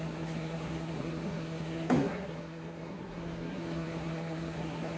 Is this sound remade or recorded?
remade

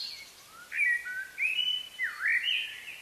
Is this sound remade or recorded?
recorded